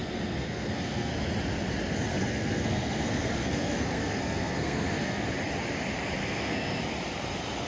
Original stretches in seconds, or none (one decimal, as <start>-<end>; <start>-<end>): 1.1-2.1; 5.2-6.2; 6.8-7.7

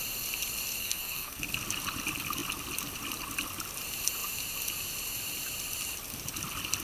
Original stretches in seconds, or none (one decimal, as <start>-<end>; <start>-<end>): 0.0-0.8; 1.4-6.8

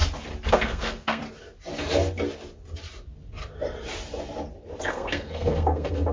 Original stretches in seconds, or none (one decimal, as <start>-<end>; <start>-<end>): 0.0-0.5; 1.2-4.9